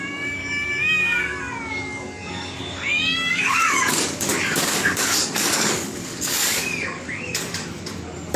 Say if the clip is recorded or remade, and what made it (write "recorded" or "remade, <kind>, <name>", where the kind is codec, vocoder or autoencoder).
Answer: remade, codec, DAC